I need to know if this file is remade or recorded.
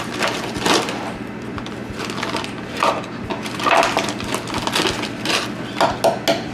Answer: recorded